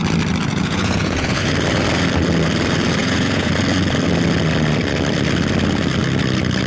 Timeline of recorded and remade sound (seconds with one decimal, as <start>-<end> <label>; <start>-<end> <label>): 0.0-0.5 recorded; 0.5-1.5 remade; 1.5-3.0 recorded; 3.0-3.5 remade; 3.5-6.7 recorded